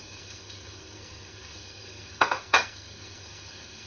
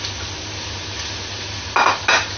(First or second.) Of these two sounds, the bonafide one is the second